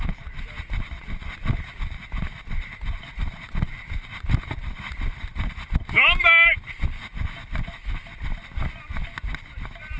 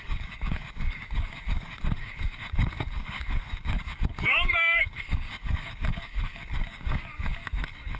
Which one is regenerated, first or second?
second